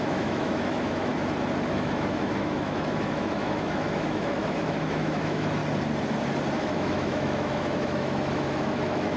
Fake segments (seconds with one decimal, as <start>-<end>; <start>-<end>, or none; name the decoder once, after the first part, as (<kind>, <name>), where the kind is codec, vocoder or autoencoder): 0.0-1.1 (autoencoder, DAC-VAE); 1.7-5.6; 6.5-9.2